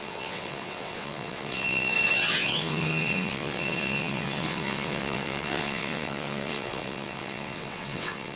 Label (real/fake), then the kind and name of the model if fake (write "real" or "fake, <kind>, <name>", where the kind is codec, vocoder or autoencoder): fake, vocoder, WaveNeXt